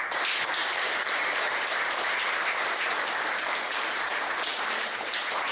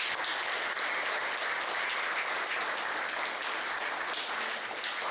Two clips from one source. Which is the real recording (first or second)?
second